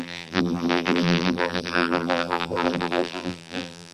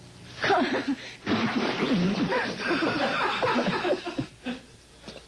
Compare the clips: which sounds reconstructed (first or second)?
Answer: first